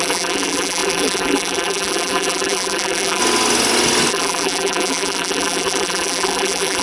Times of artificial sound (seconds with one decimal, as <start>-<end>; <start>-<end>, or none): 0.0-3.2; 4.1-6.8

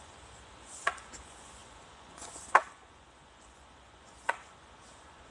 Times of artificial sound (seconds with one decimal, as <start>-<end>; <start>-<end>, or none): 0.0-5.3

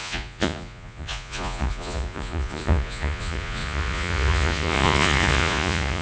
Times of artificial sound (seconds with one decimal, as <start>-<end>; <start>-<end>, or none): 0.0-6.0

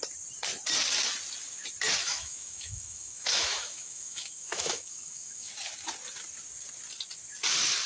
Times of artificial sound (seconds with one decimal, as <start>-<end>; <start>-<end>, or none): 2.0-5.5

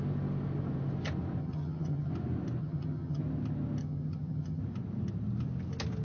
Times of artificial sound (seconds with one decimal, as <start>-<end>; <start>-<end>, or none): 1.4-2.1; 2.6-3.2; 3.8-4.6